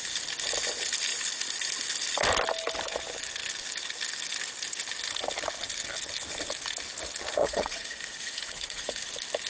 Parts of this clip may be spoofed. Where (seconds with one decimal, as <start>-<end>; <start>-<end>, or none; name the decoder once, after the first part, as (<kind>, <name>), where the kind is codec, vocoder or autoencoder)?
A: 7.4-9.0 (vocoder, Vocos)